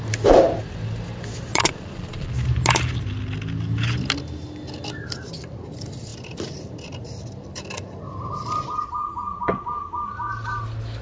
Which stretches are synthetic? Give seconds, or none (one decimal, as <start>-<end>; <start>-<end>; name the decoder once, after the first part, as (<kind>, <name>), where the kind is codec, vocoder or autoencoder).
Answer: 1.5-2.3 (vocoder, Vocos)